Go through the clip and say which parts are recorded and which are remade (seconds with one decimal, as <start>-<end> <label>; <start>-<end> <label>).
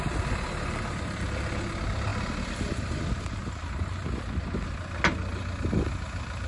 0.0-6.5 recorded